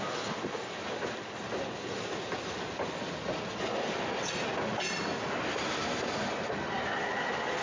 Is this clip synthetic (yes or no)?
no